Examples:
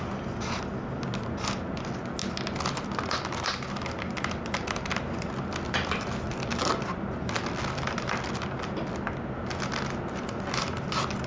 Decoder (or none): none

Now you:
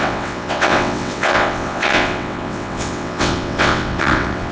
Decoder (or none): vocoder, WaveNeXt